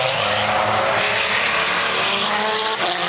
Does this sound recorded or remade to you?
recorded